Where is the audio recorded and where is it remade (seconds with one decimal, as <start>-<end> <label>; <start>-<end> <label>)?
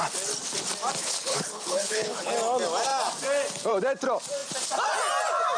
0.0-1.0 recorded; 1.0-2.3 remade; 2.3-5.6 recorded